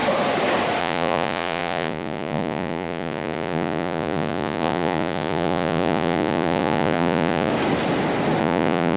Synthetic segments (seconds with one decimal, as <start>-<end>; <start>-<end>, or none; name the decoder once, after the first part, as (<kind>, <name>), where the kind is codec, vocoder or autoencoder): 0.8-7.5 (vocoder, Vocos); 8.4-9.0

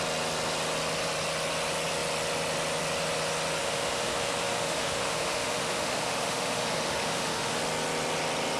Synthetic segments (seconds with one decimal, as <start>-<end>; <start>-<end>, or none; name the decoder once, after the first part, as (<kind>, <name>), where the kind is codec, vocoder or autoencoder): 3.6-7.6 (autoencoder, DAC-VAE)

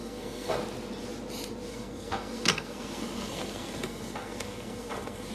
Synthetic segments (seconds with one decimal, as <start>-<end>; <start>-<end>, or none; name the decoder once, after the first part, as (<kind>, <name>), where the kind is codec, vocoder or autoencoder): 0.0-0.6 (codec, SNAC); 1.7-5.3

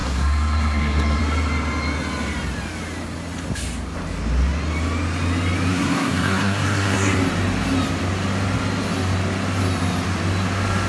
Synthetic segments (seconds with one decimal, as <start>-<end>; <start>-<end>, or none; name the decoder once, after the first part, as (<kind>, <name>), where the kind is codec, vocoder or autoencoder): 0.0-1.2 (codec, SNAC); 5.7-7.2

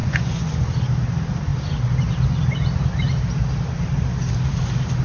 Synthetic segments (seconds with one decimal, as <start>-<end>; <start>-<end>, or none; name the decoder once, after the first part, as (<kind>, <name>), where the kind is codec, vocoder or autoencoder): 0.0-0.6 (vocoder, Vocos)

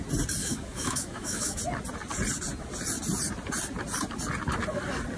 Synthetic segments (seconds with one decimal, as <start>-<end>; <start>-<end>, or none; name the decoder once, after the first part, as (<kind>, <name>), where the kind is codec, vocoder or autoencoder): 0.4-1.6 (autoencoder, DAC-VAE)

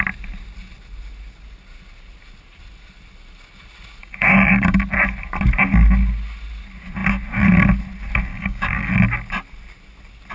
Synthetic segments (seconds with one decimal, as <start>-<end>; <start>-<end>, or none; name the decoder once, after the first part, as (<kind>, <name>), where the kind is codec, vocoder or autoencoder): 4.0-4.8 (codec, DAC); 8.3-8.9

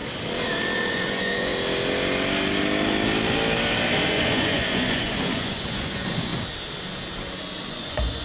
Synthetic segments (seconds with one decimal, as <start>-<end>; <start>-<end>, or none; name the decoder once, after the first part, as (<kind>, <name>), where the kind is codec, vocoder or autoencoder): 0.9-1.5 (vocoder, Vocos); 4.1-6.3; 7.7-8.2